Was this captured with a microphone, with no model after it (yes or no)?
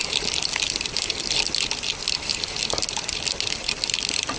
yes